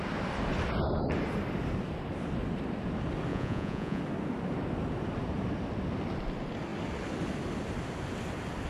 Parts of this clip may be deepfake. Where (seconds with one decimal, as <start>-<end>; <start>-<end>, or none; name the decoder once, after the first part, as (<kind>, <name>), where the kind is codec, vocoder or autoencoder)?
3.3-4.0 (vocoder, Vocos)